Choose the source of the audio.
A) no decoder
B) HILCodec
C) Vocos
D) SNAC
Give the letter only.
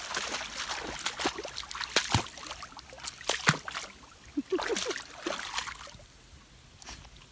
A